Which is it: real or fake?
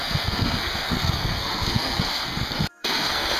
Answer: fake